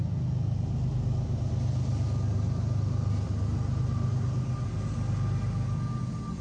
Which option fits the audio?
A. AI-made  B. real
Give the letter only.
B